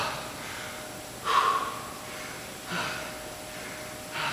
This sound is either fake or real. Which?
real